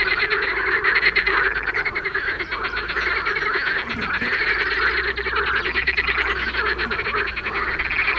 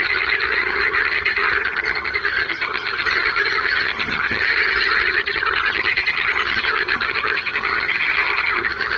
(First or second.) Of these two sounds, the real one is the first